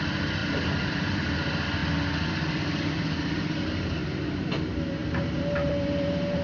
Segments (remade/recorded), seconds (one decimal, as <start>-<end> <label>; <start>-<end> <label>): 0.0-0.4 recorded; 0.4-1.3 remade; 1.3-4.0 recorded; 4.0-4.6 remade; 4.6-5.0 recorded; 5.0-6.4 remade